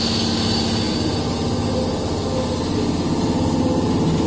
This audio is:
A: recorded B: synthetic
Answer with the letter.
A